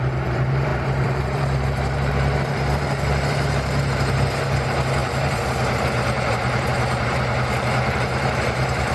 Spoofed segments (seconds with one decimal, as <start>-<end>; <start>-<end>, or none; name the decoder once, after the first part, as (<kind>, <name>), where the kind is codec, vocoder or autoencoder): 0.0-8.9 (vocoder, BigVGAN v2)